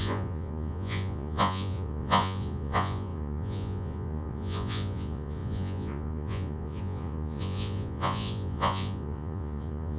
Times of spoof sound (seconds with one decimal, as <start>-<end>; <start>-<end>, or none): 0.0-10.0